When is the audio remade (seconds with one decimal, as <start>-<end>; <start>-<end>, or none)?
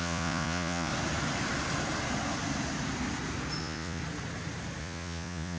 0.0-0.9; 3.6-4.0; 4.8-5.6